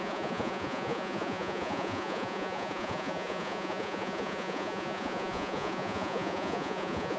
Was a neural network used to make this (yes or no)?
yes